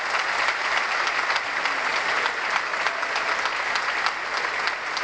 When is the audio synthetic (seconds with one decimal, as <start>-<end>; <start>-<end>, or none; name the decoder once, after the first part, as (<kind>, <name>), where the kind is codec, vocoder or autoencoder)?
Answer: none